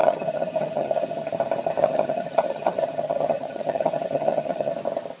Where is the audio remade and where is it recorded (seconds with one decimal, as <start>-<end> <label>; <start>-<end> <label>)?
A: 0.0-1.3 remade; 1.3-1.8 recorded; 1.8-4.7 remade; 4.7-5.2 recorded